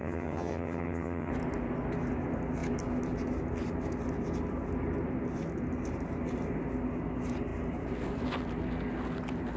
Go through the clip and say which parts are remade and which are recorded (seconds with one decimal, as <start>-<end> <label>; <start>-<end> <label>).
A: 0.0-1.3 remade; 1.3-9.6 recorded